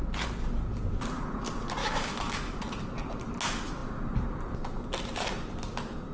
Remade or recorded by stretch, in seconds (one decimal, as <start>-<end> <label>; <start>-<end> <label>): 0.0-1.8 recorded; 1.8-2.6 remade; 2.6-6.1 recorded